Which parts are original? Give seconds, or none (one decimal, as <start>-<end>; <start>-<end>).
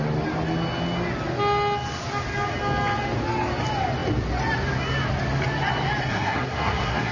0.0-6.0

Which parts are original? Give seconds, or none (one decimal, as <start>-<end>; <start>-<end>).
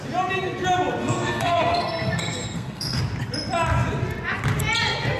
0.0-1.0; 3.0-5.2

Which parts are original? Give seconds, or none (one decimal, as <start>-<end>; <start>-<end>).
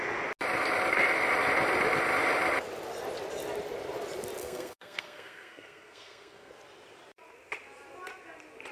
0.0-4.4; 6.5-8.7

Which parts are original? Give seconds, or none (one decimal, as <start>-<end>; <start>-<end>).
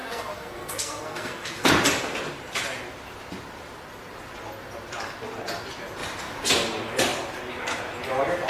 1.7-8.5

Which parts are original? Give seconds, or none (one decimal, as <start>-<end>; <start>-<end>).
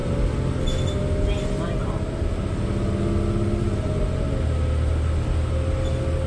0.0-6.3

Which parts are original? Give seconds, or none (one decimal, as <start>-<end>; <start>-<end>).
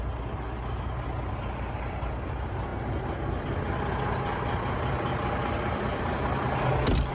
0.0-7.1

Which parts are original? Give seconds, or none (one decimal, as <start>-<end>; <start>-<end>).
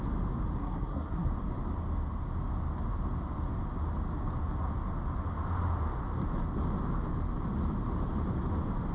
0.0-0.6; 1.3-8.9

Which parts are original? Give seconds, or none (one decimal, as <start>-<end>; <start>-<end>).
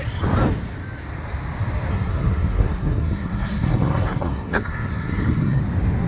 0.0-1.9; 5.6-6.1